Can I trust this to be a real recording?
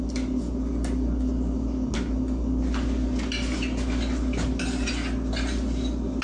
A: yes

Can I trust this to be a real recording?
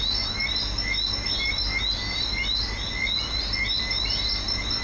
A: yes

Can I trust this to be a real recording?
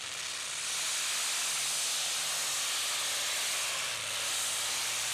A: yes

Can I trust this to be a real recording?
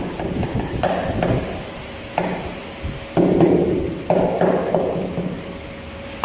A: yes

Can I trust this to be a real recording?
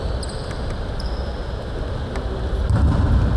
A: yes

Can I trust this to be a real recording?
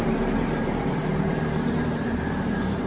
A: no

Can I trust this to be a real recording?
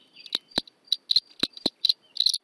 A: yes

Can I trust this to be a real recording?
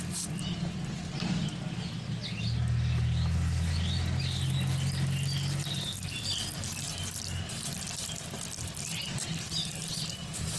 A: yes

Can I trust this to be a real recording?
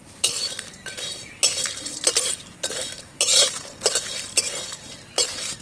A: yes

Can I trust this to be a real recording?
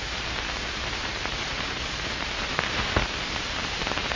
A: no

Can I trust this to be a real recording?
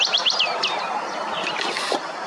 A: no